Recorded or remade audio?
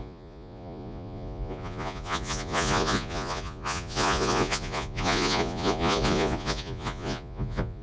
remade